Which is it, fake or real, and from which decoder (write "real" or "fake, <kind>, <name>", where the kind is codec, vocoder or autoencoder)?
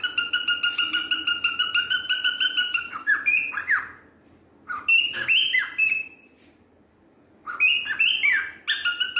real